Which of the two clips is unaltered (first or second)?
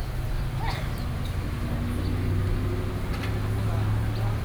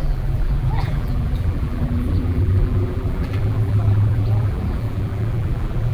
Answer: first